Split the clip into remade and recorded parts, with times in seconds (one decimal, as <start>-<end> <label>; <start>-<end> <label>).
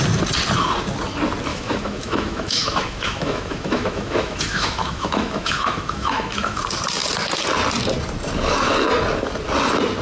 0.0-1.5 recorded; 1.5-6.6 remade; 6.6-10.0 recorded